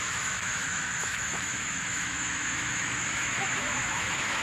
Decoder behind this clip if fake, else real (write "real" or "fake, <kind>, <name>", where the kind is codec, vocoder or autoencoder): fake, autoencoder, DAC-VAE